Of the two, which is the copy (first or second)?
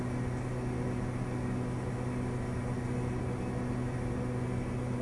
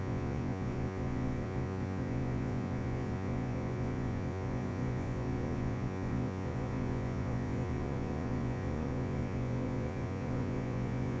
second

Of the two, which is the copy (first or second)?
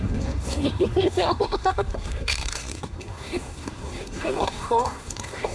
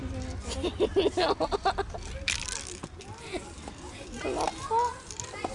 first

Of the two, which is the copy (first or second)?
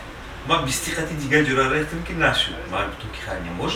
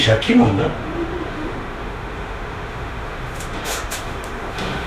second